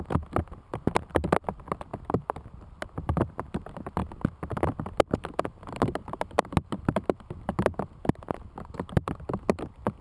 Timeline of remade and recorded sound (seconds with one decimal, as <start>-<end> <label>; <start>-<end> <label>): 0.0-10.0 recorded